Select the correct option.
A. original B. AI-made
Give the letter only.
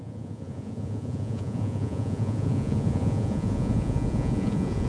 B